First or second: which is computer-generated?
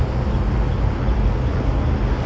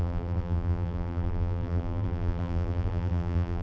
second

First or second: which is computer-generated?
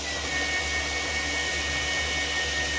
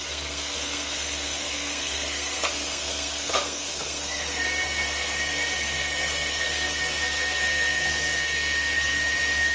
second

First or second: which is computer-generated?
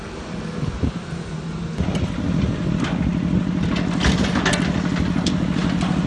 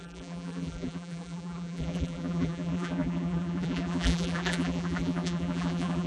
second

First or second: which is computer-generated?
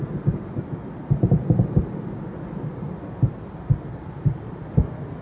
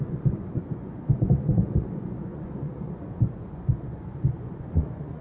second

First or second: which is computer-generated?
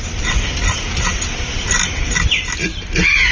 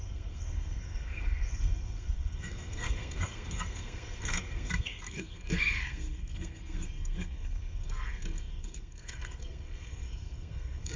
second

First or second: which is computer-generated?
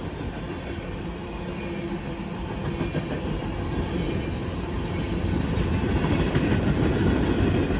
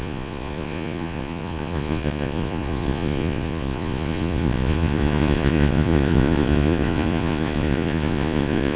second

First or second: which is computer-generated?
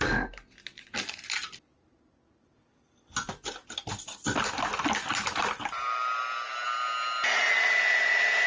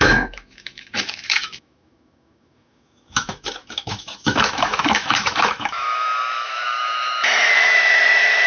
second